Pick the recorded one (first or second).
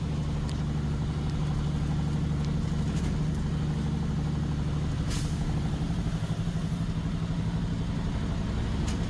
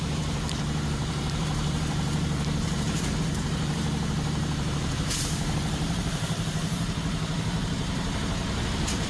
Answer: first